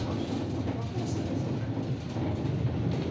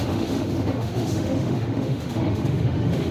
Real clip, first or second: first